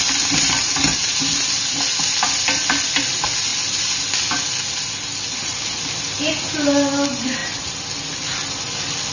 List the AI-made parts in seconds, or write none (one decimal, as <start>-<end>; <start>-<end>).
none